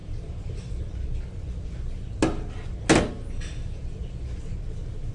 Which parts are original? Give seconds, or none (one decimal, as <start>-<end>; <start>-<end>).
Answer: 0.0-5.1